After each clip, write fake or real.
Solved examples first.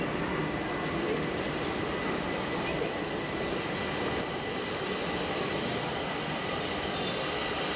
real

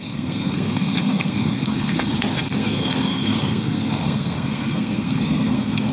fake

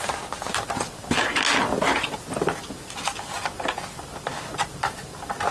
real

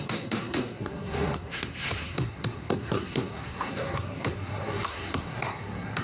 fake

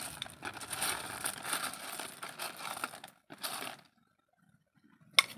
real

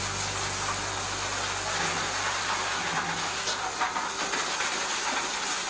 real